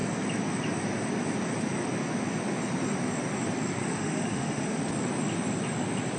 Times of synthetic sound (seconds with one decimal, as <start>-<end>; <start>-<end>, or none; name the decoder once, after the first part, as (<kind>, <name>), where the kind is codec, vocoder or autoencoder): 3.8-4.8 (autoencoder, DAC-VAE)